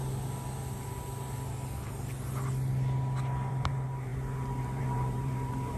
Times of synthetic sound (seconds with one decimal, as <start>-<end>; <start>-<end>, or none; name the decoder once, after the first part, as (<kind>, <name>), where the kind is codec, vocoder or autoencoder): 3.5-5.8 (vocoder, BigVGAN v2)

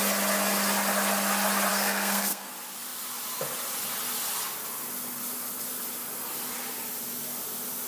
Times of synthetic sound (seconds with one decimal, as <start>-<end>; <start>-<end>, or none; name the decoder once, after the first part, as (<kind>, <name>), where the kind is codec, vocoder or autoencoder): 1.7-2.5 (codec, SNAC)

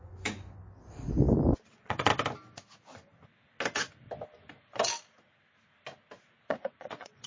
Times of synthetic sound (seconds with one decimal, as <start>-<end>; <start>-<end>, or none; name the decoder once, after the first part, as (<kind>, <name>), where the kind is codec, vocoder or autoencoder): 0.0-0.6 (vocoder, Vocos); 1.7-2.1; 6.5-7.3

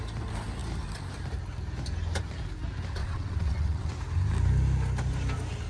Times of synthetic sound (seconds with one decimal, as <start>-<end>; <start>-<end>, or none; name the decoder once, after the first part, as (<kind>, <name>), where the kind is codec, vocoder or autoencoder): 3.0-3.9 (vocoder, WaveNeXt)

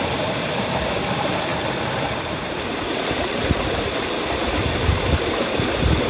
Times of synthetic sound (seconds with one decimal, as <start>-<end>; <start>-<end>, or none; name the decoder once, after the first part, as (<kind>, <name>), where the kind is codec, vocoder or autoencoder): 0.0-6.1 (vocoder, BigVGAN v2)

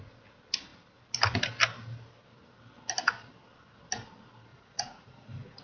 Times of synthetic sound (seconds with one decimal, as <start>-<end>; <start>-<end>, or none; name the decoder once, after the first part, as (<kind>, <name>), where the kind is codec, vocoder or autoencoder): 4.5-5.6 (vocoder, Vocos)

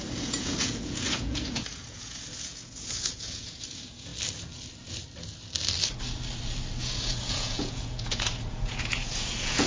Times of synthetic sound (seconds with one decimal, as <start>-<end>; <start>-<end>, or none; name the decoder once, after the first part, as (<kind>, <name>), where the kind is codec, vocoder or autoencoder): 0.0-4.1 (vocoder, Vocos); 6.8-9.7

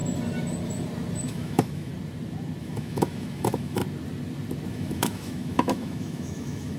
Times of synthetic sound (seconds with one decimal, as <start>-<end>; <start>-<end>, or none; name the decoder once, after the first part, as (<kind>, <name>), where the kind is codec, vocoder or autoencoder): 1.3-1.9 (autoencoder, DAC-VAE); 2.6-3.8; 4.7-6.8